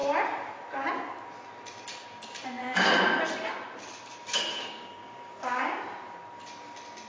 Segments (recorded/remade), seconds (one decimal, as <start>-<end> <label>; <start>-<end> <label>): 0.0-4.5 recorded; 4.5-5.8 remade; 5.8-7.1 recorded